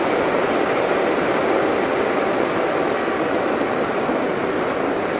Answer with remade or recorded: recorded